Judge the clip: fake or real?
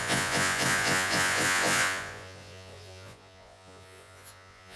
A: fake